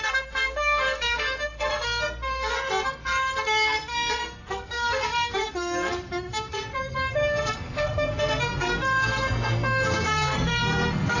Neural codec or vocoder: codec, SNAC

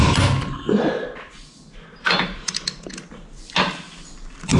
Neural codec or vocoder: none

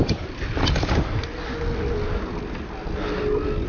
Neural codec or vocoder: none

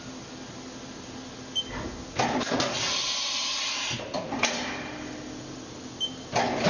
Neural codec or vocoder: none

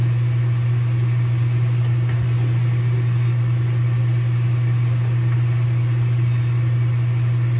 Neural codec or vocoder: none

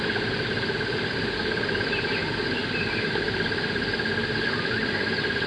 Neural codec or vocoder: none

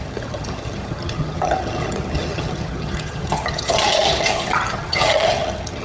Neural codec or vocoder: vocoder, HiFi-GAN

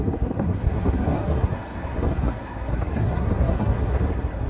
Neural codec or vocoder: codec, SNAC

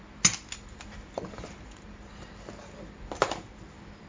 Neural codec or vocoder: none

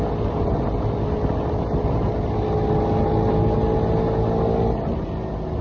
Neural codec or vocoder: none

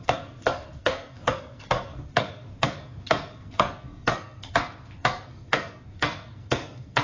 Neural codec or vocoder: codec, SNAC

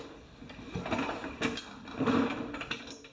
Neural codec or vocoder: none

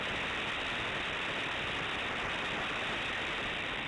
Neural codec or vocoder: none